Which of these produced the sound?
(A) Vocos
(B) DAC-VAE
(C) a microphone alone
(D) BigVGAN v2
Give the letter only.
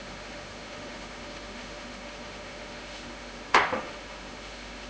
B